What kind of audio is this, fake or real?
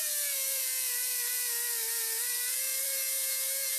fake